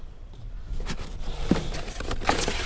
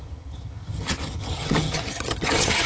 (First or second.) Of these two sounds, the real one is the first